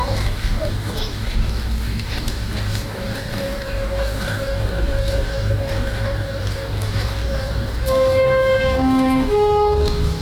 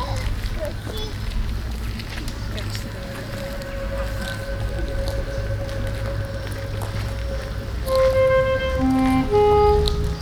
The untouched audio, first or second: second